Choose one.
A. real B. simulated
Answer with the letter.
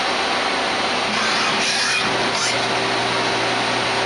A